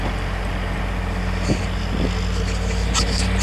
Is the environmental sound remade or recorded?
recorded